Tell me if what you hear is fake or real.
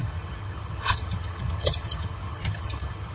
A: fake